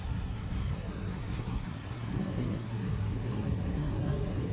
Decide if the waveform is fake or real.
fake